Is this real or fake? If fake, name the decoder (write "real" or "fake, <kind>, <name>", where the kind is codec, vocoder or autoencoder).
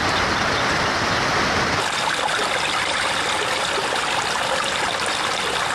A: real